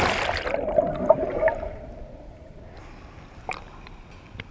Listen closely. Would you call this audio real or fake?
real